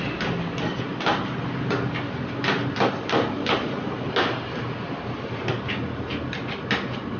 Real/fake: real